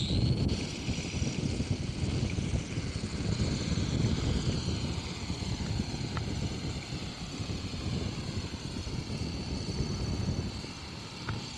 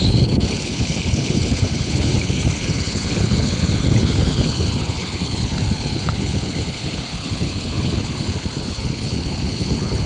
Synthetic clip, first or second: second